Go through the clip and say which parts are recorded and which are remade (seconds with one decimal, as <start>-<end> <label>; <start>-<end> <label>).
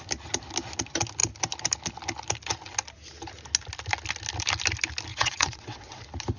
0.0-5.1 recorded; 5.1-6.0 remade; 6.0-6.4 recorded